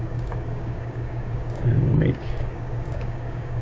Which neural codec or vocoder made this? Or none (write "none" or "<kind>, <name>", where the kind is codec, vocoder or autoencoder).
codec, DAC